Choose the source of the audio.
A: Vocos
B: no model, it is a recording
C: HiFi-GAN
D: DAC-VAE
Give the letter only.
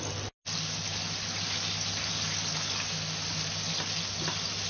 B